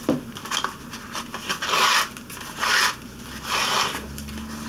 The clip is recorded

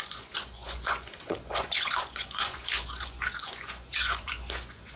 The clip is remade